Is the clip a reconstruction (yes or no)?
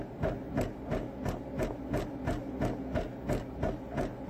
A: no